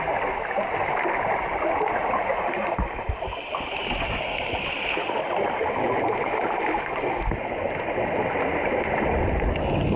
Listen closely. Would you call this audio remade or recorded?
recorded